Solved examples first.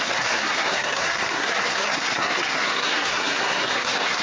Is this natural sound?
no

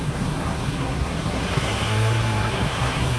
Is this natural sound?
no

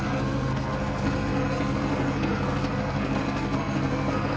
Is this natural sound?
no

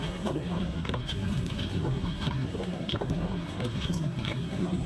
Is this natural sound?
no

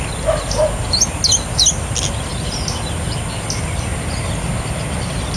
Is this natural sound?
yes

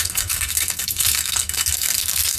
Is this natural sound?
no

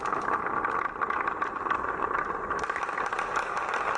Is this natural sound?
yes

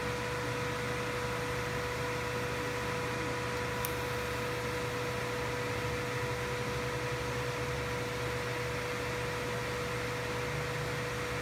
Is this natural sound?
yes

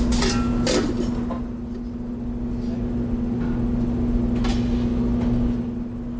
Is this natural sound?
yes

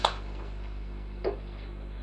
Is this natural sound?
no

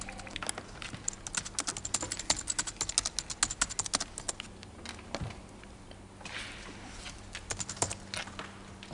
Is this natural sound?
yes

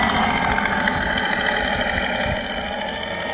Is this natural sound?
yes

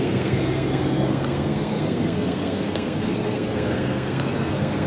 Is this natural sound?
no